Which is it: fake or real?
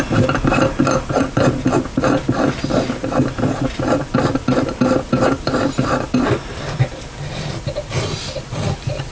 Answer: real